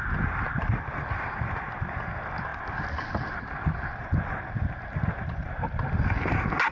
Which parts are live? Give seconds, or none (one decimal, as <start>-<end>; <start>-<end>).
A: 0.0-6.7